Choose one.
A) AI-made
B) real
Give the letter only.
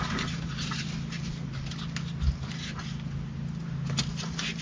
B